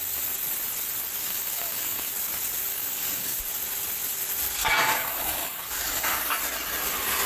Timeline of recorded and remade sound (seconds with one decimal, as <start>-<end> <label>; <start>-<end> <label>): 0.0-1.2 recorded; 1.2-2.1 remade; 2.1-2.7 recorded; 2.7-3.4 remade; 3.4-4.6 recorded; 4.6-6.4 remade; 6.4-7.3 recorded